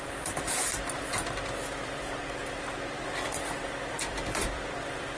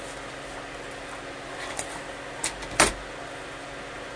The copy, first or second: first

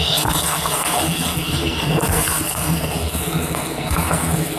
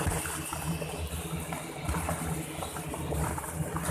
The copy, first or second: first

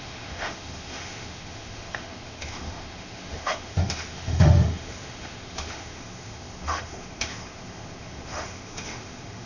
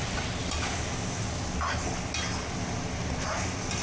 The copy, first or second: first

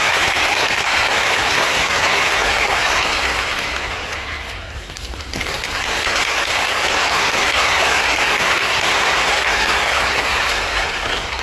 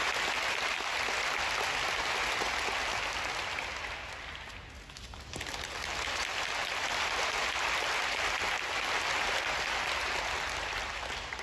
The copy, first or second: first